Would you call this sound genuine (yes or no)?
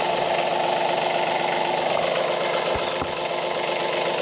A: yes